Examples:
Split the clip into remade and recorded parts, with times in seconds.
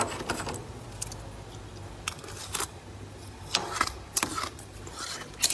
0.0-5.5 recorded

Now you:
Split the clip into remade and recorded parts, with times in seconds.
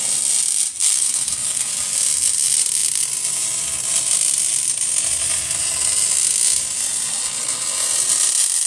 0.0-0.8 recorded; 0.8-1.7 remade; 1.7-8.7 recorded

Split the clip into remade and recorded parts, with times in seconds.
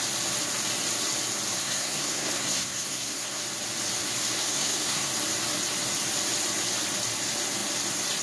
0.0-1.6 recorded; 1.6-3.4 remade; 3.4-4.4 recorded; 4.4-5.1 remade; 5.1-8.2 recorded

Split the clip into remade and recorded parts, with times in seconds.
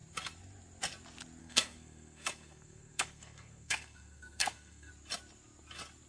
0.0-1.4 recorded; 1.4-4.9 remade; 4.9-6.1 recorded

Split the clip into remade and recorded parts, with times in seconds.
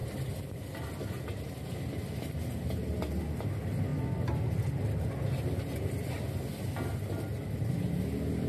0.0-8.5 recorded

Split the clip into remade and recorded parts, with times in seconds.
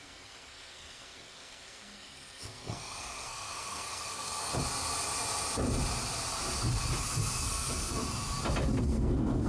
0.0-4.5 remade; 4.5-7.4 recorded; 7.4-8.0 remade; 8.0-8.8 recorded; 8.8-9.5 remade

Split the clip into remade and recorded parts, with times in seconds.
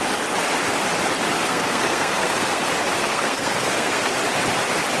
0.0-1.4 recorded; 1.4-2.6 remade; 2.6-3.0 recorded; 3.0-4.1 remade; 4.1-5.0 recorded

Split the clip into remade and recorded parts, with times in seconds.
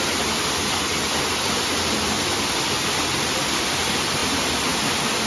0.0-5.3 recorded